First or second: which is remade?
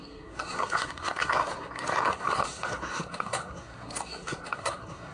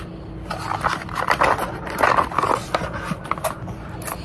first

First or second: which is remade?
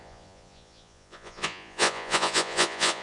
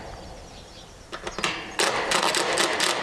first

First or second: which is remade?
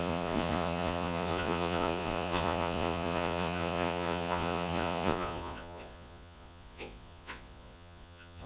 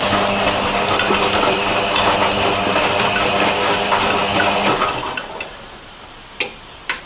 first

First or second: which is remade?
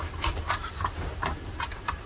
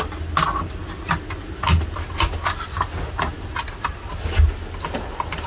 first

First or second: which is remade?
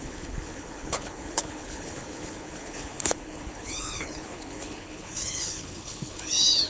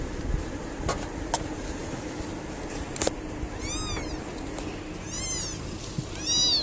first